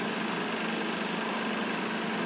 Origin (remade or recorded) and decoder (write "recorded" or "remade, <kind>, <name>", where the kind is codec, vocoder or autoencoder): recorded